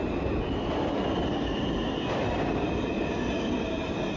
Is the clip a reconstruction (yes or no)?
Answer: no